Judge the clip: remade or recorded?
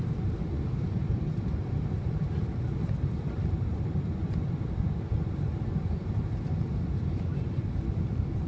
recorded